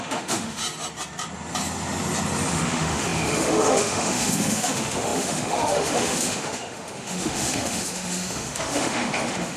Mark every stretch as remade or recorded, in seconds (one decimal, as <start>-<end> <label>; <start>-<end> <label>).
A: 0.0-0.6 remade; 0.6-2.5 recorded; 2.5-9.6 remade